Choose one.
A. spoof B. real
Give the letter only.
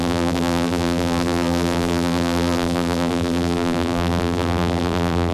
A